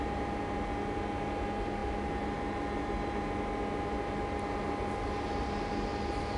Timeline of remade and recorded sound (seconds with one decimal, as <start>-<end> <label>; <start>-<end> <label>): 0.0-6.4 recorded